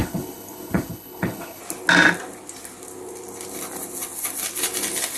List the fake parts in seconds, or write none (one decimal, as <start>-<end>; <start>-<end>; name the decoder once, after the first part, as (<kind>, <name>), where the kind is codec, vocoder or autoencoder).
0.0-1.6 (codec, HILCodec)